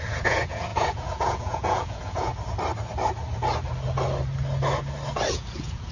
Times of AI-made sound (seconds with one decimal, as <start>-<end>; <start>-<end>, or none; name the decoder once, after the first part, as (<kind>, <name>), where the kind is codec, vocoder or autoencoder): 0.0-2.3 (vocoder, Vocos); 5.3-5.9